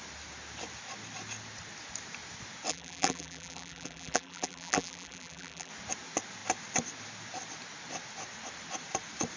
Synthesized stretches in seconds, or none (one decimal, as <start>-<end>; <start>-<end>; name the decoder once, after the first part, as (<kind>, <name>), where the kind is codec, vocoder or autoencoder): 2.7-5.7 (vocoder, BigVGAN v2)